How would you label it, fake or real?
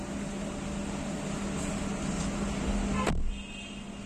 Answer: real